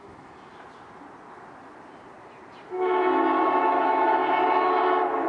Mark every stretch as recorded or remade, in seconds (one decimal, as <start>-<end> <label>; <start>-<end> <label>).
0.0-0.5 remade; 0.5-3.7 recorded; 3.7-4.2 remade; 4.2-5.3 recorded